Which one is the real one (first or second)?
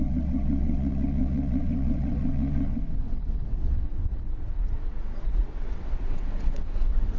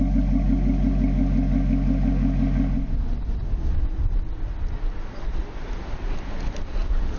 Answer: second